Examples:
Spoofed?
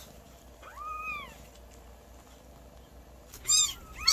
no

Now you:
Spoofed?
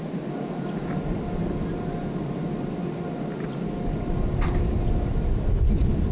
no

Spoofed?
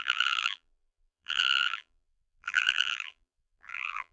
yes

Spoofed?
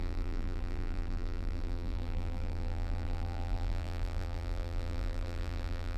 yes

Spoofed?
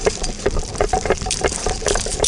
yes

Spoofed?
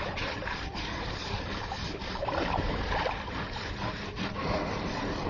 yes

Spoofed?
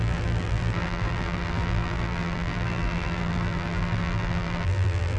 yes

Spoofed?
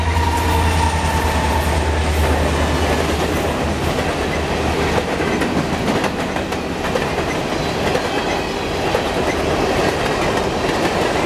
no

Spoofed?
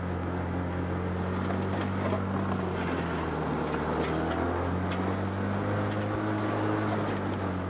no